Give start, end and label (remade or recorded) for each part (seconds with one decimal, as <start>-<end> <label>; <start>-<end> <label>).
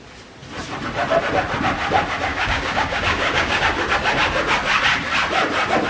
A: 0.0-2.3 recorded; 2.3-3.6 remade; 3.6-5.9 recorded